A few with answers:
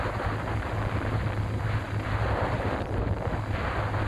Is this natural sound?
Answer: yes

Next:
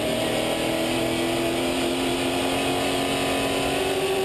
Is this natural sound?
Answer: yes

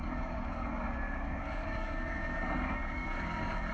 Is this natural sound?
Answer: no